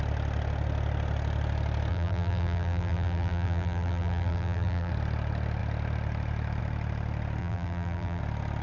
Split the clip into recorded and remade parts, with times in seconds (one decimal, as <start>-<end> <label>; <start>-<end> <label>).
0.0-1.9 recorded; 1.9-4.9 remade; 4.9-7.4 recorded; 7.4-8.2 remade; 8.2-8.6 recorded